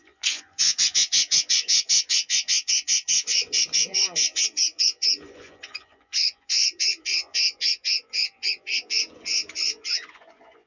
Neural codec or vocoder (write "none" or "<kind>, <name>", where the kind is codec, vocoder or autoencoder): vocoder, Vocos